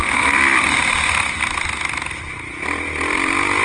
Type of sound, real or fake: real